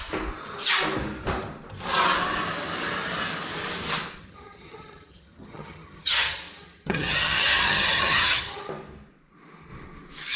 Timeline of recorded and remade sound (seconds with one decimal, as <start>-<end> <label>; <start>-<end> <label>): 0.0-4.2 recorded; 4.2-8.7 remade; 8.7-10.4 recorded